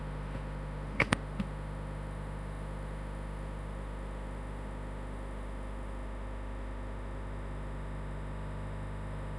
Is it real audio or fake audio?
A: fake